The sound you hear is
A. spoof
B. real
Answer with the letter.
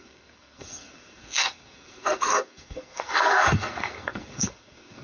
A